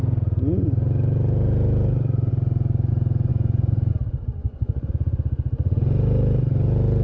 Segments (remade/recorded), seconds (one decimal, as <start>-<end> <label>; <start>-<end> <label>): 0.0-3.3 recorded; 3.3-3.9 remade; 3.9-4.4 recorded; 4.4-4.9 remade; 4.9-7.0 recorded